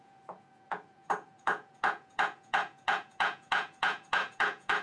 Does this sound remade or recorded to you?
remade